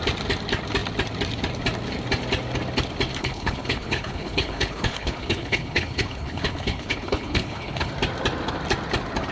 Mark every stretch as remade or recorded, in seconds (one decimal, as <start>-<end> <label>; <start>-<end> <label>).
0.0-3.2 recorded; 3.2-7.9 remade; 7.9-9.3 recorded